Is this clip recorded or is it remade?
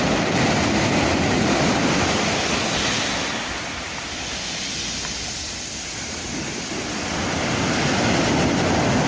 recorded